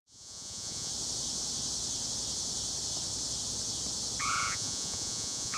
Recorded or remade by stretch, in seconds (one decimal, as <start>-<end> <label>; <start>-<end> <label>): 0.0-0.9 remade; 0.9-4.2 recorded; 4.2-5.6 remade